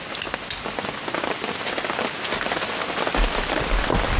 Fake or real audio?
real